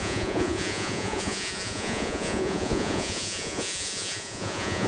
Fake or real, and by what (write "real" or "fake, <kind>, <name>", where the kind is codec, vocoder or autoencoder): fake, vocoder, Vocos